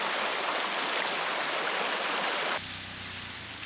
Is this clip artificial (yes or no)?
no